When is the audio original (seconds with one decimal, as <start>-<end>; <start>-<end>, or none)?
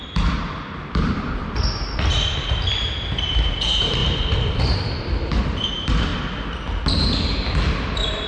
1.4-3.3; 6.1-7.9